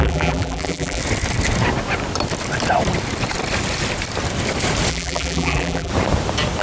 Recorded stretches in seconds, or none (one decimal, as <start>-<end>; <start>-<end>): 1.0-4.9; 5.9-6.6